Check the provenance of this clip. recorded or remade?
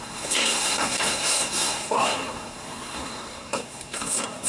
remade